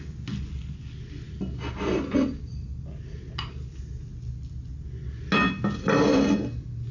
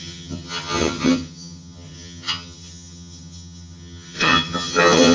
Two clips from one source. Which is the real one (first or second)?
first